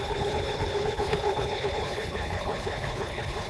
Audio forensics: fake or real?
fake